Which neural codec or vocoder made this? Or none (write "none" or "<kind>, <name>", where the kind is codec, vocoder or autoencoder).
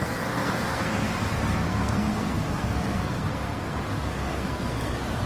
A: codec, SNAC